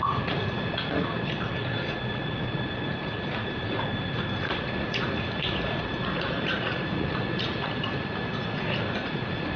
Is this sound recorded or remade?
remade